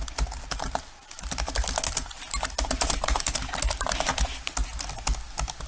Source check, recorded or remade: recorded